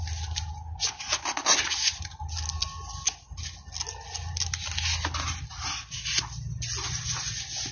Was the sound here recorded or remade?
recorded